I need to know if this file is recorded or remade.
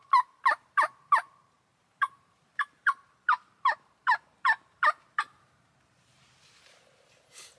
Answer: remade